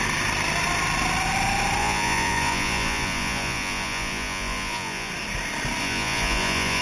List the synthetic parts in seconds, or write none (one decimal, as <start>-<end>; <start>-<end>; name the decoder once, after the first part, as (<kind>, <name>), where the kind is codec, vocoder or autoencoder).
1.8-5.1 (vocoder, Vocos); 5.8-6.8